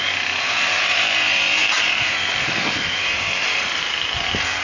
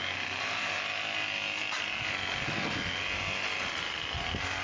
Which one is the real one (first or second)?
second